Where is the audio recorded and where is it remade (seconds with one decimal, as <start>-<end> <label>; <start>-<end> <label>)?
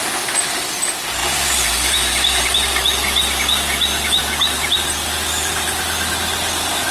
0.0-6.9 recorded